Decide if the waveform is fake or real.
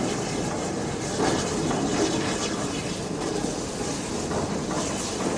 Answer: real